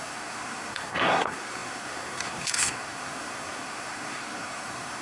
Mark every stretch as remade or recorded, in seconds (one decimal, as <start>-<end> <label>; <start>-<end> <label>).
0.0-5.0 remade